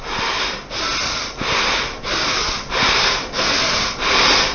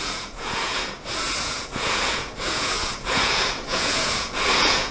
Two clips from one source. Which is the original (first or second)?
first